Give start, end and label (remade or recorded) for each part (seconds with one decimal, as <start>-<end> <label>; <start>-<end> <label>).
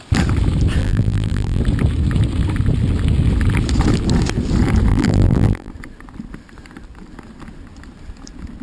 0.0-0.8 recorded; 0.8-1.6 remade; 1.6-4.9 recorded; 4.9-5.7 remade; 5.7-8.6 recorded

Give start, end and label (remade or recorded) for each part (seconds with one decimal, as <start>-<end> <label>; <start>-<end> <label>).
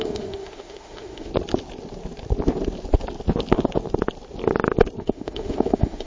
0.0-1.3 remade; 1.3-5.0 recorded; 5.0-6.1 remade